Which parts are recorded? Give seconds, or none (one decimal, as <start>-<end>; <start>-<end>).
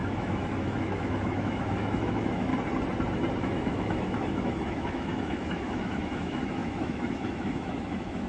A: 2.5-3.4